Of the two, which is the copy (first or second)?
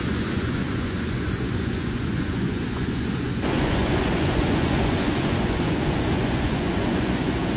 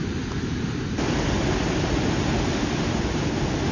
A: first